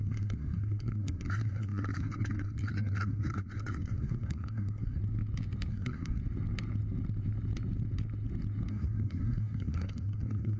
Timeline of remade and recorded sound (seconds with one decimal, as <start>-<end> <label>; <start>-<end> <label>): 0.0-5.0 remade; 5.0-5.7 recorded; 5.7-6.2 remade; 6.2-8.7 recorded; 8.7-10.6 remade